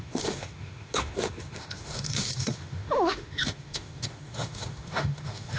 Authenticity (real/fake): fake